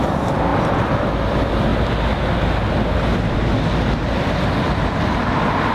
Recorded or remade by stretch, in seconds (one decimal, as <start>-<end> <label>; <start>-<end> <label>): 0.0-5.7 recorded